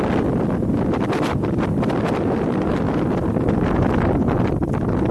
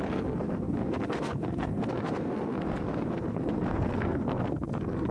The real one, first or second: first